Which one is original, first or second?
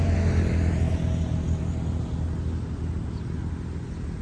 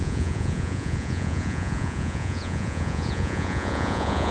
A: first